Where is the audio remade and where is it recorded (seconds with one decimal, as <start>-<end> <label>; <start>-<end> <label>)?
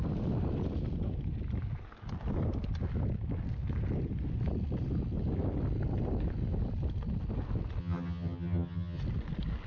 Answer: 0.0-7.8 recorded; 7.8-9.0 remade; 9.0-9.7 recorded